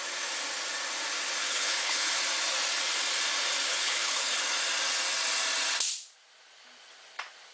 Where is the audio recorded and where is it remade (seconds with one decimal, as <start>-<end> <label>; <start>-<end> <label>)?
0.0-1.4 recorded; 1.4-2.1 remade; 2.1-3.7 recorded; 3.7-4.4 remade; 4.4-7.5 recorded